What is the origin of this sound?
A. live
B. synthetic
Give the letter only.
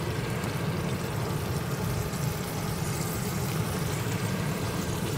B